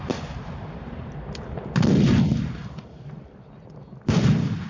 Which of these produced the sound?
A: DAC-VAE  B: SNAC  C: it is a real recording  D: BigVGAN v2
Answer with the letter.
C